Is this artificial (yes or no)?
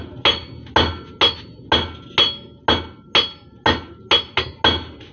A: no